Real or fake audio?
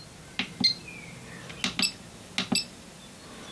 real